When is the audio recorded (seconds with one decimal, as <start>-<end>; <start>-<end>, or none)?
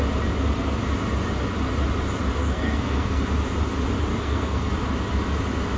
0.0-2.4; 3.2-4.1; 4.7-5.8